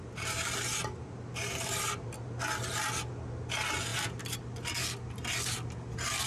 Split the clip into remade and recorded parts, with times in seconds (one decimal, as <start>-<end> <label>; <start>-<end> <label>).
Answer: 0.0-1.8 remade; 1.8-6.3 recorded

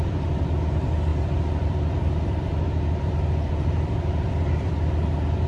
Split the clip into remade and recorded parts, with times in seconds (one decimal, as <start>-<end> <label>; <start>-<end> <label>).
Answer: 0.0-5.5 remade

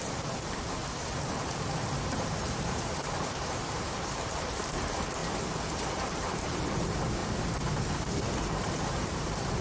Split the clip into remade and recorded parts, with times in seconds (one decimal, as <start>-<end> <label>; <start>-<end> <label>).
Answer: 0.0-0.8 remade; 0.8-1.3 recorded; 1.3-5.2 remade; 5.2-6.1 recorded; 6.1-7.2 remade; 7.2-8.3 recorded; 8.3-9.6 remade

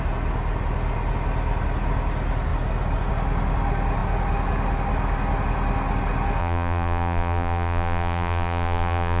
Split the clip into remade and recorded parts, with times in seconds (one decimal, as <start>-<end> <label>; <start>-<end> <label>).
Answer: 0.0-6.4 recorded; 6.4-9.2 remade

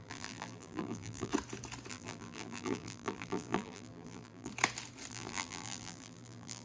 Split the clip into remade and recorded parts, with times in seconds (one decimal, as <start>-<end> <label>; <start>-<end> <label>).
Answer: 0.0-1.3 remade; 1.3-1.9 recorded; 1.9-4.5 remade; 4.5-5.1 recorded; 5.1-6.6 remade